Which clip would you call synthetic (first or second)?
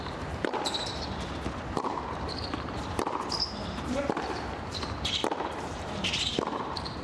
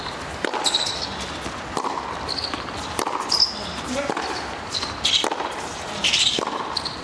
first